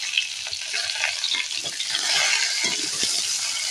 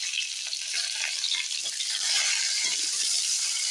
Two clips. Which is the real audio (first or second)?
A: first